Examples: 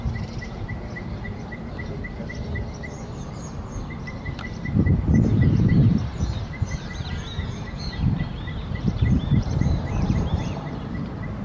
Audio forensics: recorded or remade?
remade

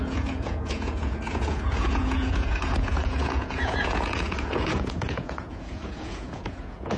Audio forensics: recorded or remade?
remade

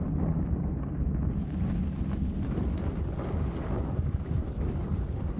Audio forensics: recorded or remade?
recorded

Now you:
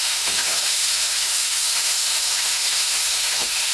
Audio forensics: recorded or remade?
remade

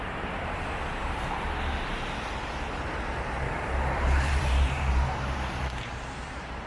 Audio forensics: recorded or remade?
remade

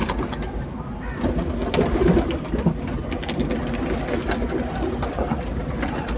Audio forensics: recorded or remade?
recorded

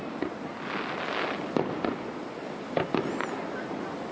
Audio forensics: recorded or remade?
recorded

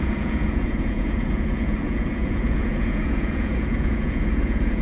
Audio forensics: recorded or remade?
remade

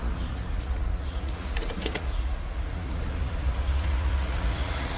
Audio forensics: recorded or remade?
remade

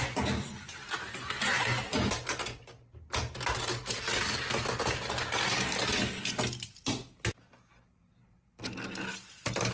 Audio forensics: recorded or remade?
recorded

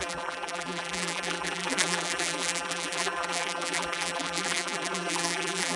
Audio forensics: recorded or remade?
remade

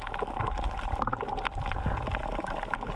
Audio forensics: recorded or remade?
recorded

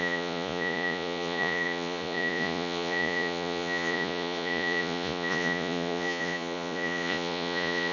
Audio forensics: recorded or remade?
remade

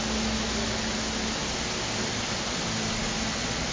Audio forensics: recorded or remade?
recorded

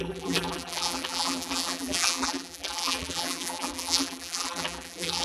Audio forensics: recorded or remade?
remade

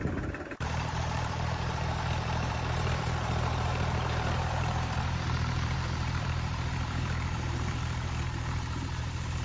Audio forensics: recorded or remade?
remade